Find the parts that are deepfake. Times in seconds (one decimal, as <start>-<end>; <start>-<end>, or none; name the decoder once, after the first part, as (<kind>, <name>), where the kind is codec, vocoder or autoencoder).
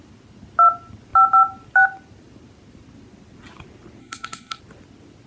4.0-4.6 (codec, SNAC)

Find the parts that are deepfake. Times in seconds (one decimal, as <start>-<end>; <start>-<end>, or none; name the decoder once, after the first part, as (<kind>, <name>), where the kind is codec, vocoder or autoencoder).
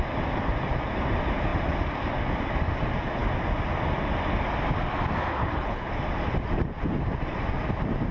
5.4-5.9 (codec, HILCodec)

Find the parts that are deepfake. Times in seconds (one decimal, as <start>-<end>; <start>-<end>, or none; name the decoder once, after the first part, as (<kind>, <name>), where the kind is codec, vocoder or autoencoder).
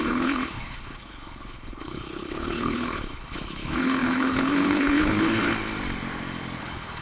0.0-5.5 (codec, HILCodec); 6.6-7.0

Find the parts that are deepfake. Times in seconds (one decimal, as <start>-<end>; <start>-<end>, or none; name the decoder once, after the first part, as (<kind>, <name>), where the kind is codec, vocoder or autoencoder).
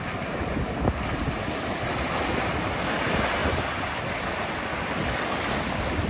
3.4-4.3 (vocoder, BigVGAN v2)